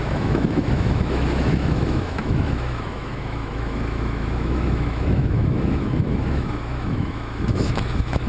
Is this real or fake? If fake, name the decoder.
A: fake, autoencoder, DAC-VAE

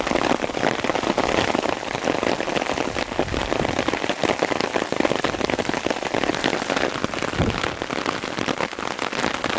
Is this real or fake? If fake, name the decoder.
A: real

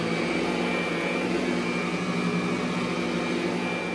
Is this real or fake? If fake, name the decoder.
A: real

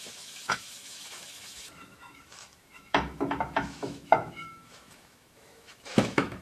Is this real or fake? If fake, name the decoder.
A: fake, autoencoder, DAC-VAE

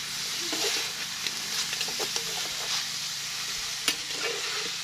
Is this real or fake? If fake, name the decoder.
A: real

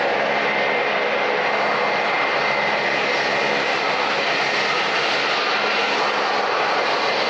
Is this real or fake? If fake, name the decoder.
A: real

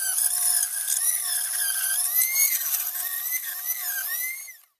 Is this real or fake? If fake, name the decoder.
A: real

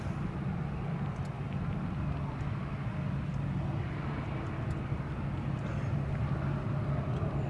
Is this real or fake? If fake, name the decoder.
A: real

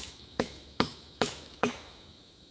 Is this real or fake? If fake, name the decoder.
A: fake, autoencoder, DAC-VAE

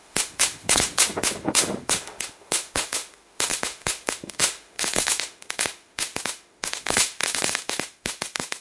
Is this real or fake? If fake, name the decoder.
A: fake, autoencoder, DAC-VAE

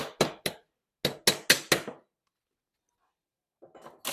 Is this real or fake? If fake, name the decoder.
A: real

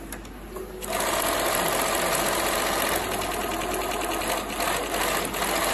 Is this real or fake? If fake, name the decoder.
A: real